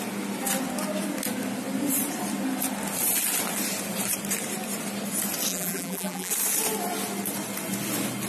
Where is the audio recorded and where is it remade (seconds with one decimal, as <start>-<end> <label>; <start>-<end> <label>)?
0.0-5.5 recorded; 5.5-6.3 remade; 6.3-8.3 recorded